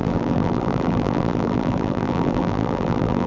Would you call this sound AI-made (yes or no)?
yes